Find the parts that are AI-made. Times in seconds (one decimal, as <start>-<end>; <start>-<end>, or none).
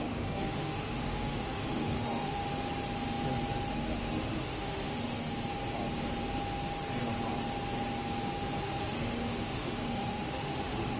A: 0.0-2.4; 3.7-5.3; 8.6-11.0